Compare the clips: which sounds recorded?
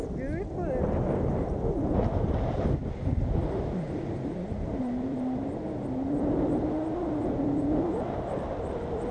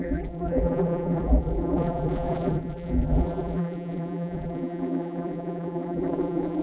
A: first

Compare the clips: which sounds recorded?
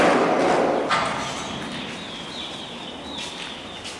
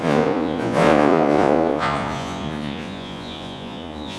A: first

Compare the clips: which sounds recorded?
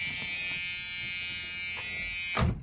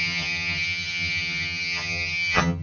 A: first